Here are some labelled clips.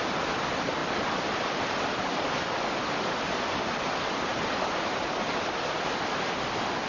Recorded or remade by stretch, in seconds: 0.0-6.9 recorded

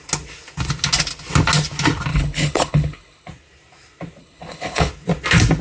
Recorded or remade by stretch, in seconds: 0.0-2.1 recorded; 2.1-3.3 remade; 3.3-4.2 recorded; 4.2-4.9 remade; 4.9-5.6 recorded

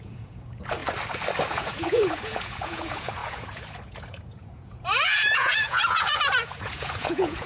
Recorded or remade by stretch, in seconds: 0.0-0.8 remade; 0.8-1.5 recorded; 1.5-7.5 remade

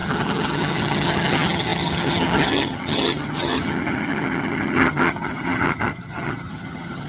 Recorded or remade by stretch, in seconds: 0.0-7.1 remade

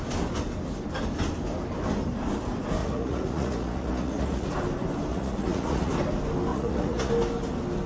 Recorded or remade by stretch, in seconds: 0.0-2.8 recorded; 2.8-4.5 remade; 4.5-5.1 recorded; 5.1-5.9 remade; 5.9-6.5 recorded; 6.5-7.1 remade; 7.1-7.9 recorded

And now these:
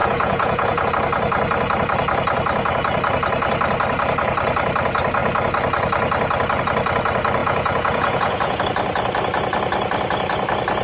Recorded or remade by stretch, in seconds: 0.0-0.9 remade; 0.9-7.4 recorded; 7.4-8.6 remade; 8.6-10.8 recorded